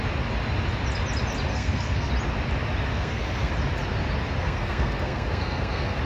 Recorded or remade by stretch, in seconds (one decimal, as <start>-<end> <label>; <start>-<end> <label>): 0.0-1.5 recorded; 1.5-2.1 remade; 2.1-2.9 recorded; 2.9-3.5 remade; 3.5-4.4 recorded; 4.4-6.0 remade

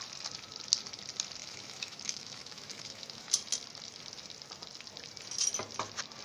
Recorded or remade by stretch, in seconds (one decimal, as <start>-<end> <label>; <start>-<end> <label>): 0.0-1.4 recorded; 1.4-3.3 remade; 3.3-6.2 recorded